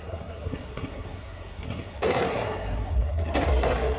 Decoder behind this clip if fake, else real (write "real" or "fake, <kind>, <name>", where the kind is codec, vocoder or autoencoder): fake, codec, SNAC